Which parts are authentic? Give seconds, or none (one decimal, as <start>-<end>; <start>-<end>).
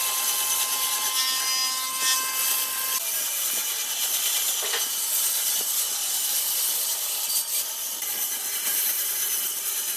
0.0-3.2; 4.4-8.0